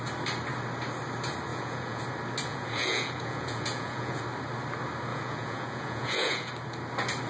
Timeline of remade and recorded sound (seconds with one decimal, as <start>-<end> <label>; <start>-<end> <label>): 0.0-1.5 recorded; 1.5-2.0 remade; 2.0-2.5 recorded; 2.5-4.2 remade; 4.2-5.1 recorded; 5.1-6.5 remade; 6.5-7.3 recorded